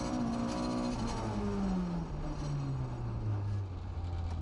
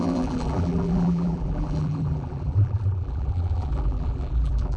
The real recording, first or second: first